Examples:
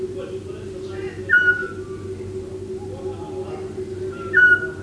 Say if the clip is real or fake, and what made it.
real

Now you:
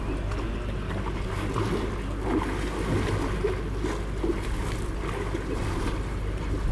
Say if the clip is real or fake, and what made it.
real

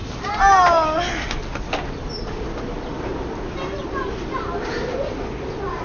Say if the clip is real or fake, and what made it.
real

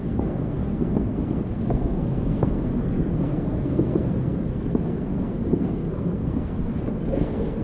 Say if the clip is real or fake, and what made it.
fake, codec, SNAC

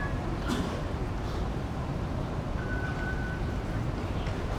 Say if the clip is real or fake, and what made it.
fake, vocoder, BigVGAN v2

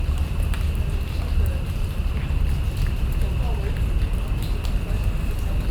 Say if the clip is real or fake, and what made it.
real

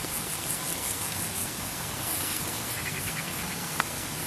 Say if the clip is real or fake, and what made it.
fake, codec, SNAC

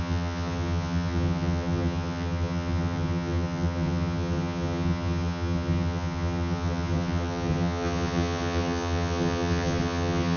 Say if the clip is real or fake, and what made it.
fake, vocoder, HiFi-GAN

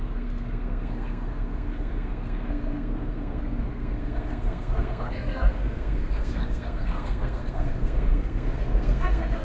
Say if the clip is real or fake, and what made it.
fake, codec, SNAC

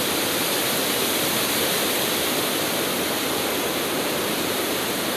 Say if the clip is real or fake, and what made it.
real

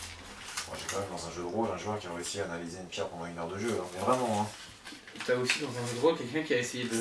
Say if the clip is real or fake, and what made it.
real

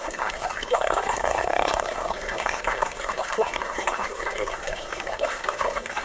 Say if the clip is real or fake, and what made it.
fake, codec, SNAC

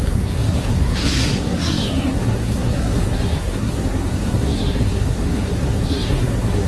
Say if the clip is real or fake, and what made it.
fake, codec, SNAC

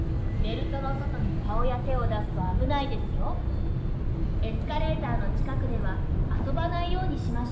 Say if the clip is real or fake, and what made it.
real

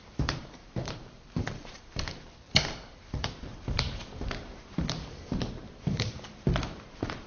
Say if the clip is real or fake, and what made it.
fake, vocoder, BigVGAN v2